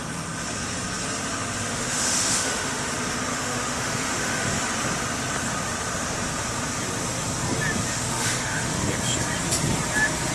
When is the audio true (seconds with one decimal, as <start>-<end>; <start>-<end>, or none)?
0.0-1.7; 2.9-3.3; 4.6-7.9; 8.9-10.3